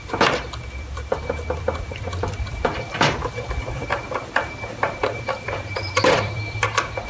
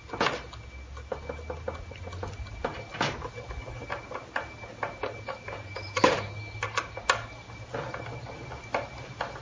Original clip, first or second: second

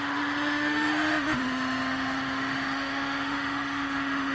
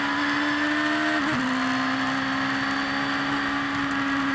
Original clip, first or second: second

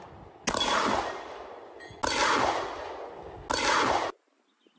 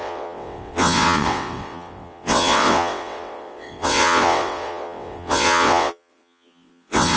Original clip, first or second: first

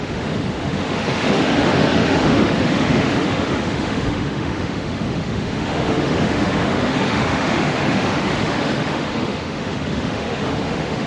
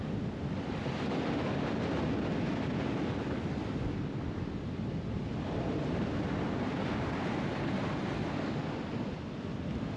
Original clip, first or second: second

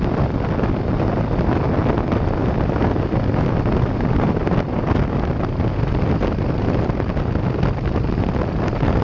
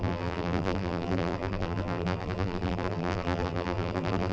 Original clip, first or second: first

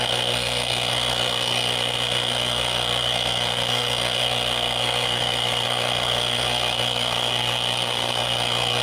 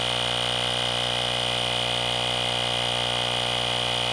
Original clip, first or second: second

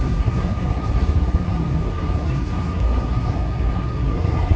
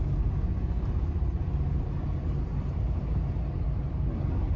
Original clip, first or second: second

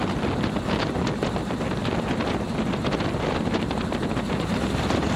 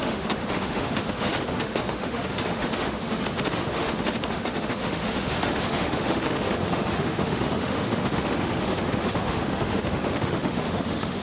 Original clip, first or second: first